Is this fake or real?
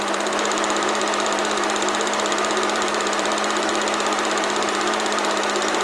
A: fake